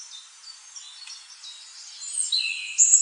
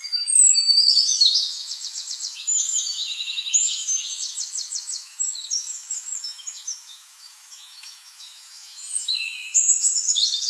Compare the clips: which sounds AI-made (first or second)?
second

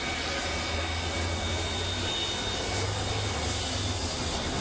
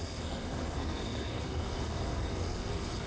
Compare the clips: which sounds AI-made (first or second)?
second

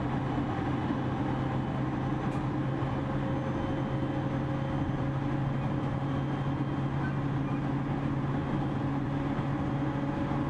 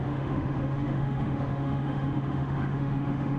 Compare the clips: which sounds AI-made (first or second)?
second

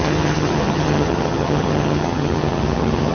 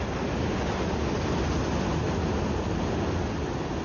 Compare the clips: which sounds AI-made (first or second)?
first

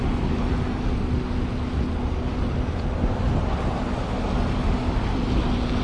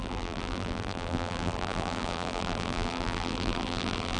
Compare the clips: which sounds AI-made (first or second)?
second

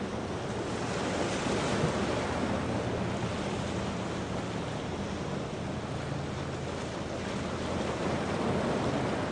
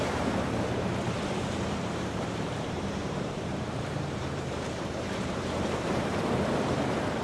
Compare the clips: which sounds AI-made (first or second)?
second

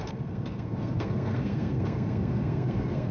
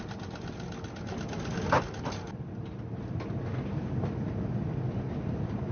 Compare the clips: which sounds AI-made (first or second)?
first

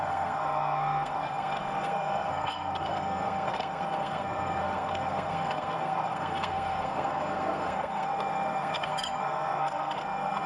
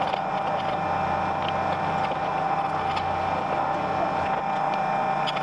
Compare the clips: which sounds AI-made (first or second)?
first